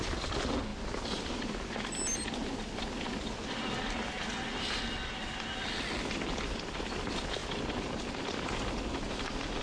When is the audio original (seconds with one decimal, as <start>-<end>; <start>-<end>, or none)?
0.0-7.4; 8.9-9.6